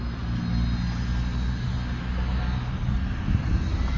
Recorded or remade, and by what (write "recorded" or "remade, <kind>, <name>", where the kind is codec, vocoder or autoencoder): recorded